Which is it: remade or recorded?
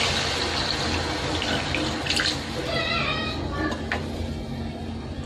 recorded